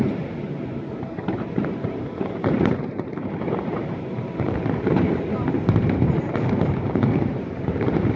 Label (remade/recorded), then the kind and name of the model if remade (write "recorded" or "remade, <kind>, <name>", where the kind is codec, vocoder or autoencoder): remade, vocoder, BigVGAN v2